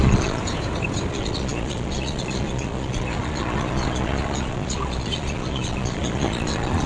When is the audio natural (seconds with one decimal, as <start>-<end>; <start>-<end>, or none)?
0.4-1.1